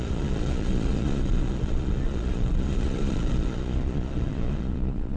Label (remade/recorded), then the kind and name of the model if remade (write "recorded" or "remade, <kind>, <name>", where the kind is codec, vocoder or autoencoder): remade, vocoder, Vocos